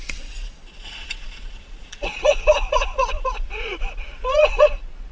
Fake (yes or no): yes